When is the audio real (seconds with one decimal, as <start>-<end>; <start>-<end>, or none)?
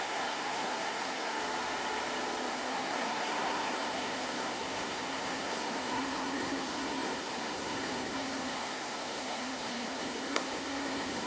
1.4-2.5